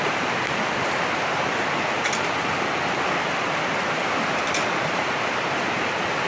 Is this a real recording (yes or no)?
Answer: yes